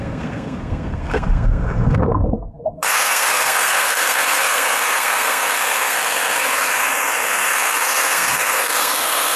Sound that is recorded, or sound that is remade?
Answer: remade